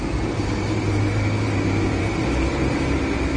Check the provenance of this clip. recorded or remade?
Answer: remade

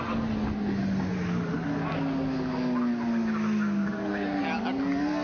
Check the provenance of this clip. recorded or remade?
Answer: recorded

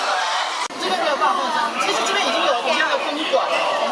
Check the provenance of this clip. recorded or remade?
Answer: recorded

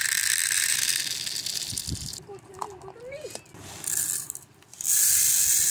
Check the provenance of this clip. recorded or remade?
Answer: recorded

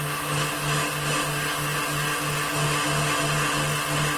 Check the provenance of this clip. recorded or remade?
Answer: recorded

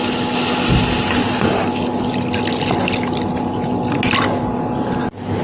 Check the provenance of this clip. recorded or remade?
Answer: recorded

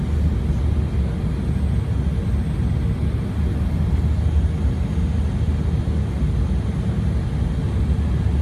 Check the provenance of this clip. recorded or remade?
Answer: recorded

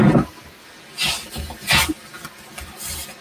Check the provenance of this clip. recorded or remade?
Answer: recorded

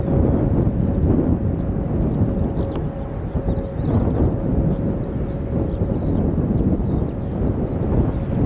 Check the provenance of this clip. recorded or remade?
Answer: recorded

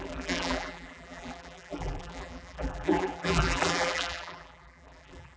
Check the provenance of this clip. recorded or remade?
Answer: remade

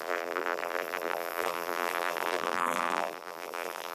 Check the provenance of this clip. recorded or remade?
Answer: remade